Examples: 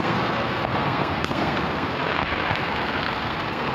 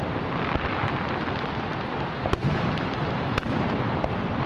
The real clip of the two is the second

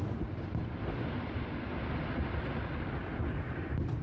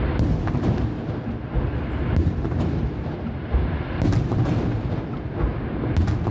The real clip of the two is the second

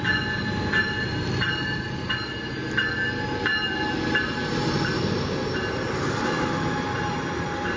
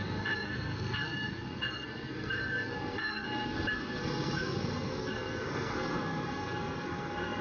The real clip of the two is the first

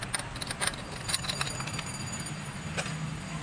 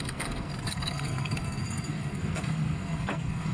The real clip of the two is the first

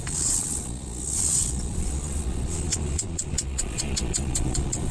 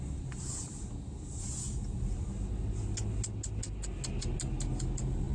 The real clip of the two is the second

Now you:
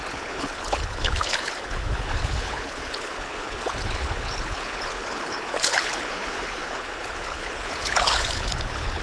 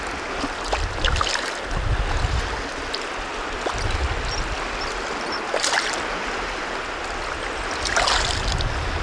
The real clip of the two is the second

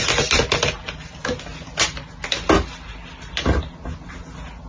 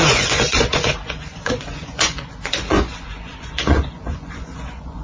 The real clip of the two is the first